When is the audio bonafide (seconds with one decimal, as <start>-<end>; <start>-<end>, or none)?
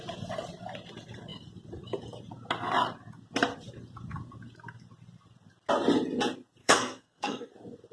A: 0.0-6.6; 7.5-7.9